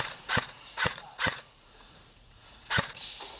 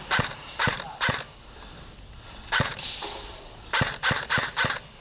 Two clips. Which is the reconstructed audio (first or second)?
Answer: first